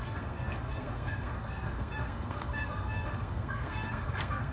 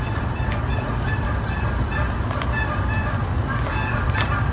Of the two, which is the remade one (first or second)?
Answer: first